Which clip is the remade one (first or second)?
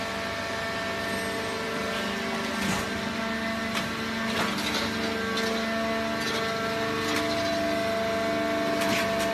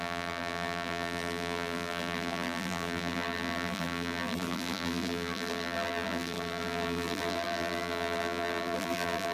second